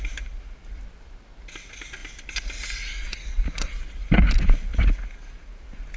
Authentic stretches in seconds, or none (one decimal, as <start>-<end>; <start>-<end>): 0.0-6.0